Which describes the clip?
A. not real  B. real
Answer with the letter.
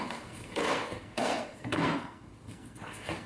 A